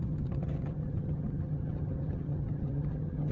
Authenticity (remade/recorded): remade